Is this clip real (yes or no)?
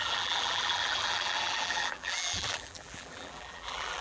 no